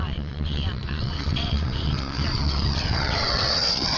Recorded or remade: remade